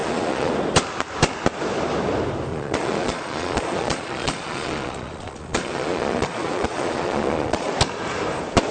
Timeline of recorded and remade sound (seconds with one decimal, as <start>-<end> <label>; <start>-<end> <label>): 0.0-0.5 remade; 0.5-2.5 recorded; 2.5-7.7 remade; 7.7-8.7 recorded